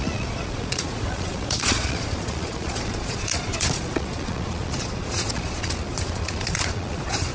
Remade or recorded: remade